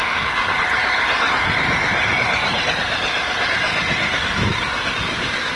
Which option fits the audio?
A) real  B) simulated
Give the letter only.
A